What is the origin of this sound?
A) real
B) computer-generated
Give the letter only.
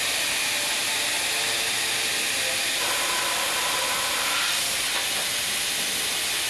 A